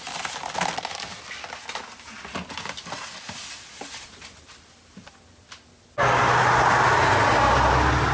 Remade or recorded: recorded